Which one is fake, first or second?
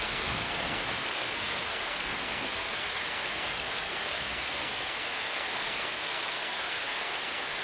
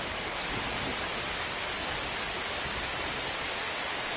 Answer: first